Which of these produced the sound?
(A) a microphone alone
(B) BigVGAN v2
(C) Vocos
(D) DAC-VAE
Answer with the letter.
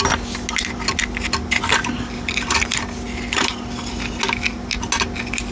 A